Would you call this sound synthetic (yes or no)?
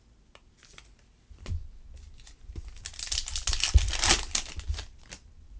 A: no